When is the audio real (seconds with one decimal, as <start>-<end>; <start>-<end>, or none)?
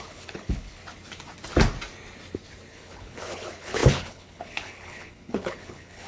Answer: 0.8-2.7